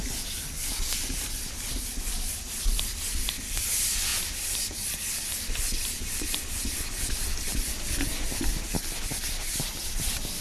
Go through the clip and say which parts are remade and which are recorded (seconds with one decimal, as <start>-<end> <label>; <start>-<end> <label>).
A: 0.0-10.4 remade